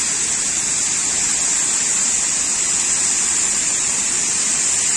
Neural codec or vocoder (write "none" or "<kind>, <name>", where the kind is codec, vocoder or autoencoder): none